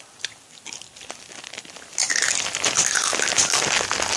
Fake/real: real